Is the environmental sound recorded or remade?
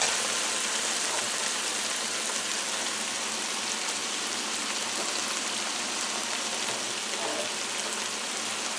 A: recorded